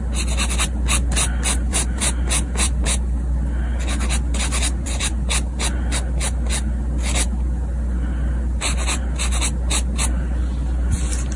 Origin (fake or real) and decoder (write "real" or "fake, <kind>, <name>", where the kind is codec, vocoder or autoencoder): real